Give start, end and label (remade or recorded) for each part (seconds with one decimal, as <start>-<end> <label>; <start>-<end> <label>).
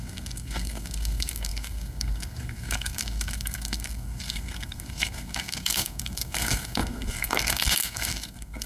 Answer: 0.0-8.7 remade